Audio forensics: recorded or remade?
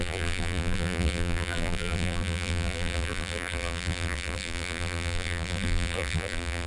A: remade